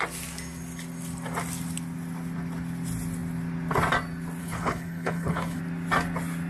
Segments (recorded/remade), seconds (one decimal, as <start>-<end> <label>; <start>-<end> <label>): 0.0-4.4 recorded; 4.4-5.6 remade; 5.6-6.5 recorded